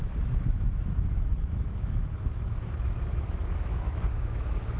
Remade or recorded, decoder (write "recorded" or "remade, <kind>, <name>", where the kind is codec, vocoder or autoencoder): remade, autoencoder, DAC-VAE